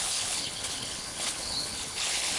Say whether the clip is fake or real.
fake